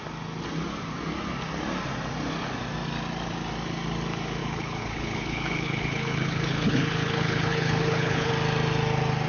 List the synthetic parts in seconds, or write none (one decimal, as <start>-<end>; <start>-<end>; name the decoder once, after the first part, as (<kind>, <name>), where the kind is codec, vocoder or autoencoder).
4.4-8.3 (codec, HILCodec)